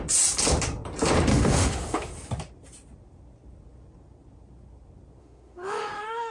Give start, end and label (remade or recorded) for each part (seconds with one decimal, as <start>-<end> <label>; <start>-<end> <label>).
0.0-1.3 recorded; 1.3-2.1 remade; 2.1-5.2 recorded; 5.2-6.3 remade